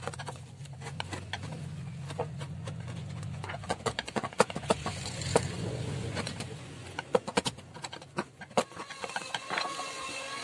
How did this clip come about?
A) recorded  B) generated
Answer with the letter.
B